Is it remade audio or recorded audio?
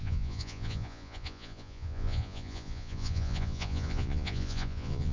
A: remade